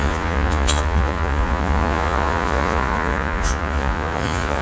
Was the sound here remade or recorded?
remade